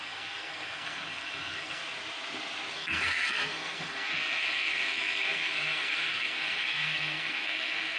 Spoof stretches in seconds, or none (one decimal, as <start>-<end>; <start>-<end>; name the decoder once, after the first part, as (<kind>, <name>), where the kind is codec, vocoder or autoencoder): 0.0-1.8 (codec, SNAC); 2.7-8.0